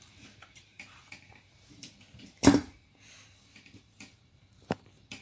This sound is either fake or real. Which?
fake